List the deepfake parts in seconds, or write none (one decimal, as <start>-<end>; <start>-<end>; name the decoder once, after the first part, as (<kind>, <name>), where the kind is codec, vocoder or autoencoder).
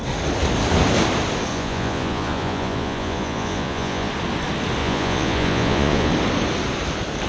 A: 1.5-4.1 (vocoder, Vocos); 4.8-6.1